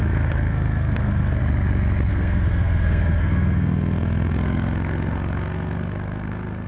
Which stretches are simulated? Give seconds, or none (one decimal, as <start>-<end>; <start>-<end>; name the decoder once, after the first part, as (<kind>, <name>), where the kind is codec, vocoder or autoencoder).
0.0-1.4 (codec, SNAC); 2.1-6.7